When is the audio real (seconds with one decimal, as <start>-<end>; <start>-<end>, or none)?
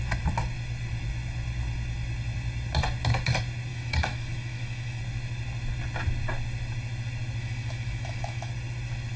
0.0-3.7; 5.0-7.4; 8.5-9.2